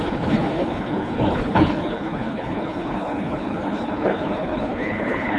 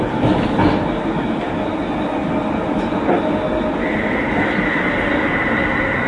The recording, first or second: second